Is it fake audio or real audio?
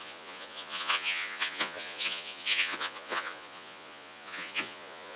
fake